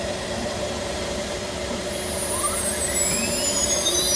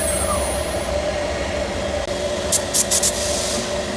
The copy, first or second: first